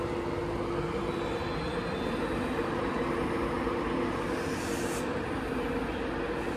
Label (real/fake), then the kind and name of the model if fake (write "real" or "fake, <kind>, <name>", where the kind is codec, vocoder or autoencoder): real